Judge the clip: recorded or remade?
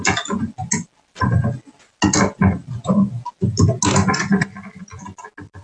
recorded